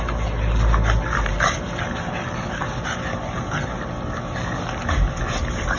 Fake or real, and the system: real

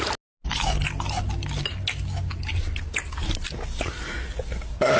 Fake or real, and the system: real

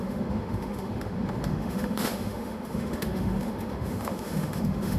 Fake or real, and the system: fake, autoencoder, DAC-VAE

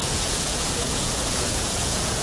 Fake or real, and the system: fake, vocoder, Vocos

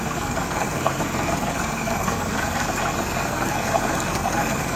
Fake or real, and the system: fake, codec, SNAC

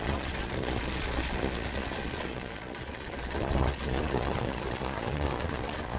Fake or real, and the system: fake, vocoder, Vocos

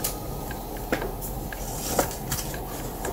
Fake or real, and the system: fake, vocoder, BigVGAN v2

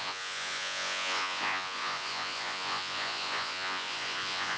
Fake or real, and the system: fake, vocoder, Vocos